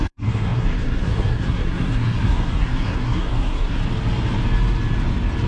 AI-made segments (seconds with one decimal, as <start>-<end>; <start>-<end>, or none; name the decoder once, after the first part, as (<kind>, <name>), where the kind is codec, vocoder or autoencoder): 0.0-3.8 (codec, SNAC)